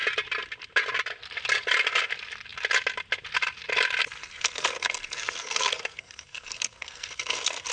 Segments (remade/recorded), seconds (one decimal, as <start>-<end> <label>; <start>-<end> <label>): 0.0-4.2 recorded; 4.2-7.7 remade